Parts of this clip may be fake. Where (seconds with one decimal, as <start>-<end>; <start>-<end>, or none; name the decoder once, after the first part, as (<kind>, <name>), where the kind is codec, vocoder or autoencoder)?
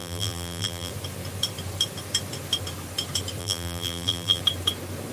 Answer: 0.0-0.9 (vocoder, BigVGAN v2); 3.4-4.4